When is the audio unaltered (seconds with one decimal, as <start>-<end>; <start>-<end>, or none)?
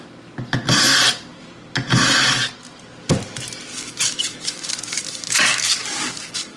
0.0-3.7